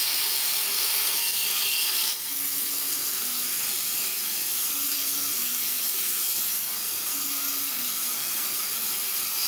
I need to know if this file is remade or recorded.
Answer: remade